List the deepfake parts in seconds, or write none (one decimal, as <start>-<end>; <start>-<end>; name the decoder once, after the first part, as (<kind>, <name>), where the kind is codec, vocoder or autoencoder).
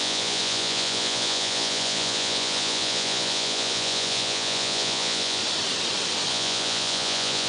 0.0-5.4 (vocoder, Vocos); 6.3-7.5